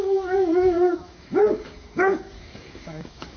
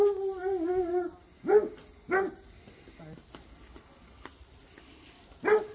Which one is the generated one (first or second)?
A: first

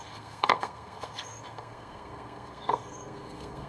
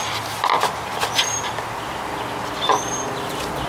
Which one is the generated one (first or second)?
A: first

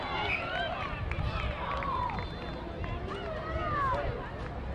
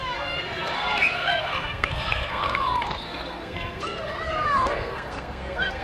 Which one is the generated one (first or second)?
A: second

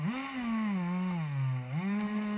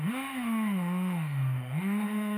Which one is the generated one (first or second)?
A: second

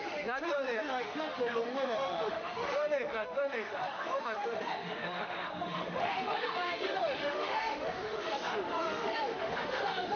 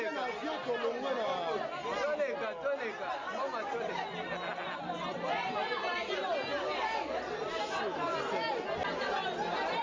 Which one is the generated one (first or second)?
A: first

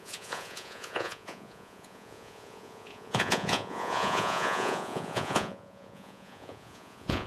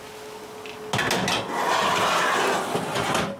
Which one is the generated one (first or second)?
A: first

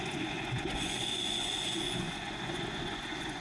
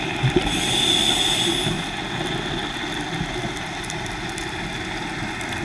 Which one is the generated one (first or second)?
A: first